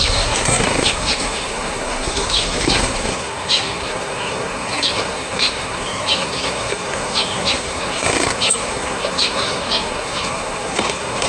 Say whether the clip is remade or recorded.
remade